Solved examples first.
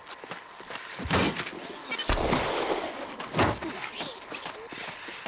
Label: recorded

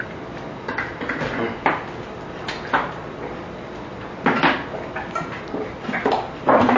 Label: recorded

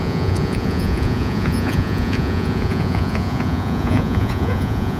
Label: remade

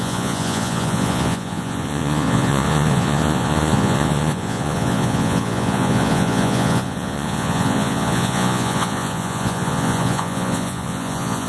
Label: remade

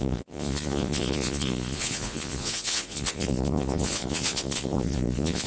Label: remade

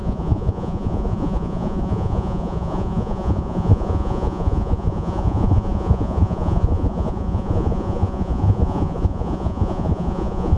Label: remade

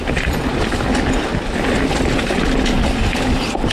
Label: recorded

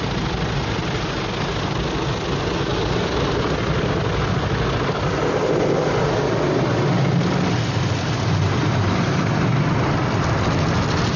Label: recorded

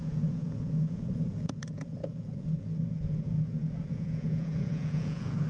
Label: remade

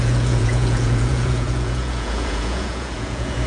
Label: remade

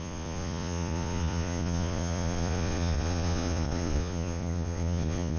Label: remade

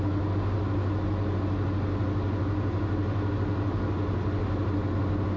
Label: recorded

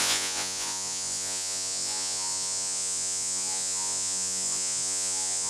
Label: remade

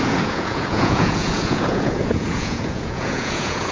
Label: remade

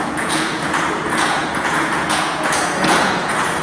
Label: remade